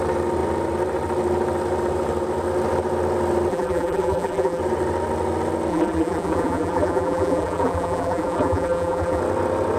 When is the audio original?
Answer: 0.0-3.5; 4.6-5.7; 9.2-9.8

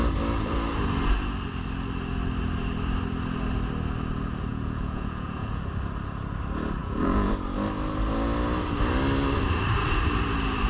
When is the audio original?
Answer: 0.0-4.5; 5.6-6.8; 7.3-10.7

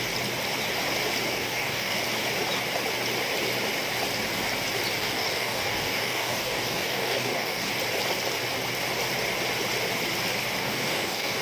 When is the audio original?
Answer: 0.0-1.3; 2.0-5.0; 7.7-10.6

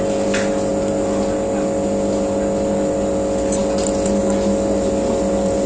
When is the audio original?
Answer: 0.0-5.7

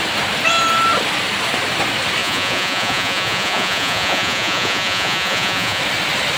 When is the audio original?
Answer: 0.0-2.2; 5.8-6.4